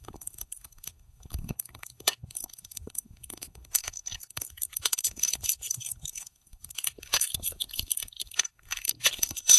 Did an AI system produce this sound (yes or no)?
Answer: yes